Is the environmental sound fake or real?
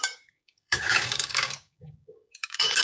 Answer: fake